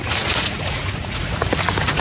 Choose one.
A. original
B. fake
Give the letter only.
B